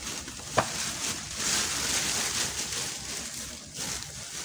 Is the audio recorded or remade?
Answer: recorded